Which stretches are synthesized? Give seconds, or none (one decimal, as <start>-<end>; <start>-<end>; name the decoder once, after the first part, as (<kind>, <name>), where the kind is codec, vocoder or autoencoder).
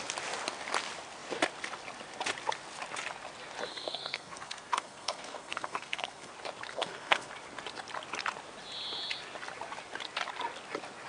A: 3.7-6.3 (codec, SNAC); 6.7-7.3